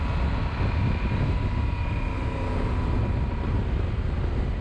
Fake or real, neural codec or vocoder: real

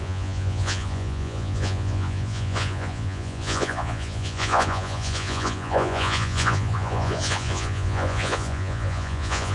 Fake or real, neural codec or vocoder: fake, vocoder, Vocos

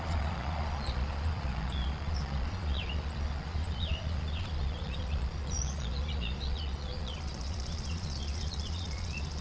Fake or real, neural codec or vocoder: fake, vocoder, Vocos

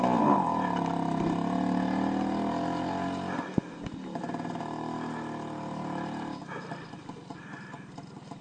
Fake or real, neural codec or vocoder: real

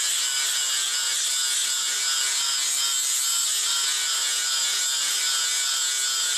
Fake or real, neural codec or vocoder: real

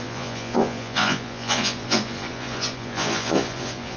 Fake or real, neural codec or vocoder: fake, vocoder, Vocos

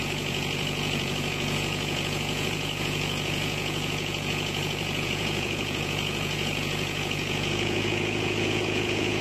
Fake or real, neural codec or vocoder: fake, vocoder, Vocos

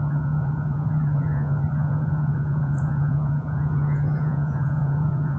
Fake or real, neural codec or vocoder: fake, vocoder, Vocos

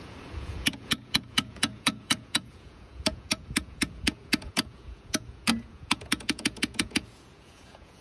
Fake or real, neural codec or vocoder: fake, vocoder, Vocos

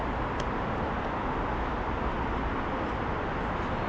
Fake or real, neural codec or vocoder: real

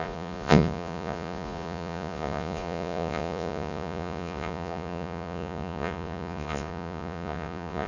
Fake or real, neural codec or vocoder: fake, vocoder, Vocos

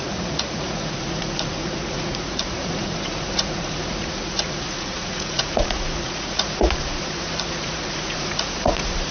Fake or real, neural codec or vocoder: fake, vocoder, Vocos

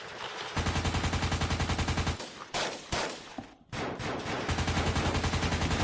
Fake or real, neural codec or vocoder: real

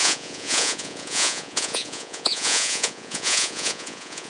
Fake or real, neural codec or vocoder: fake, vocoder, Vocos